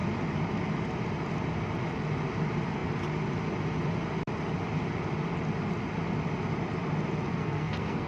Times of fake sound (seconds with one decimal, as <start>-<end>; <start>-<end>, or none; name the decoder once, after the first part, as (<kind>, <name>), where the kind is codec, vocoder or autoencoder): 7.3-8.1 (codec, SNAC)